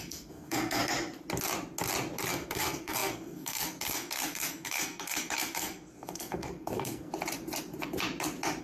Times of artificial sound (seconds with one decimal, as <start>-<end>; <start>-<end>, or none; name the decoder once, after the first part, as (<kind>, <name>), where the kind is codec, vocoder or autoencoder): 0.0-0.8 (codec, SNAC); 2.3-7.1

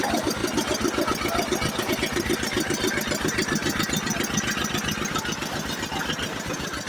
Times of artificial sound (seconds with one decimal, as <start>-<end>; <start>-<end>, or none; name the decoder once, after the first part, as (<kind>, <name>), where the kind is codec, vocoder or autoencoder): none